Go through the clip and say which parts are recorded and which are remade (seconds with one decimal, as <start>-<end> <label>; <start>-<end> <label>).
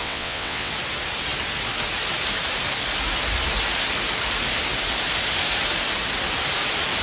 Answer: 0.0-0.7 remade; 0.7-7.0 recorded